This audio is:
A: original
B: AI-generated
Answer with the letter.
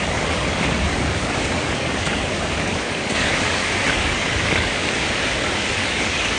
B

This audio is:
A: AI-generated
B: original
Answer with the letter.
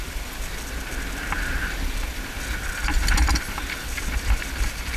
B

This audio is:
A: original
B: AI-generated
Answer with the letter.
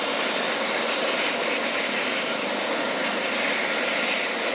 A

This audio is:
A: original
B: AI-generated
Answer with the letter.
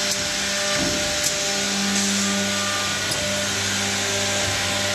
A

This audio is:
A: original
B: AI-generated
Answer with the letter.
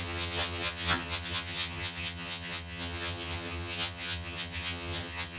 B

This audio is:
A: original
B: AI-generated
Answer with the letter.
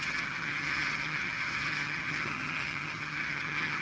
B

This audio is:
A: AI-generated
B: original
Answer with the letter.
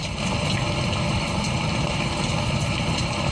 A